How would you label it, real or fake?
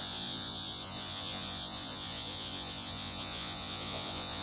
fake